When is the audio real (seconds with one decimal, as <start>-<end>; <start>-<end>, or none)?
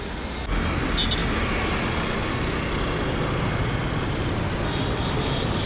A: 0.0-5.7